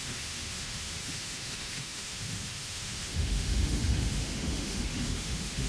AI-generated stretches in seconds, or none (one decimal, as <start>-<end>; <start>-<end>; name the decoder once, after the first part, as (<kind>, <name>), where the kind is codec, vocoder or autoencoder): 0.0-5.7 (autoencoder, DAC-VAE)